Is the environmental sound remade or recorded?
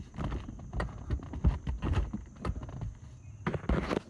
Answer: recorded